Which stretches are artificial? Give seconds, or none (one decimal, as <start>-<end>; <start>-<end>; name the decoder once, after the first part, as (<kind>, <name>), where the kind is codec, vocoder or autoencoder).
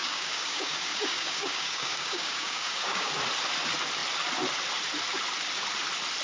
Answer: 0.0-3.1 (codec, DAC)